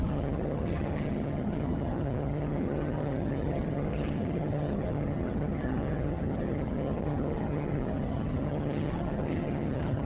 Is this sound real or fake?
fake